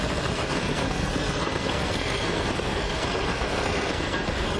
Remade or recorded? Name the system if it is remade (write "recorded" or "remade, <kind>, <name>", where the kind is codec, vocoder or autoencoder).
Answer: remade, codec, SNAC